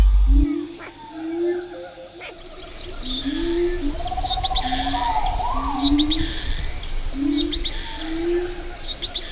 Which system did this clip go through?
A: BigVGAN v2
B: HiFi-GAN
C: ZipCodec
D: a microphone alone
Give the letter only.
D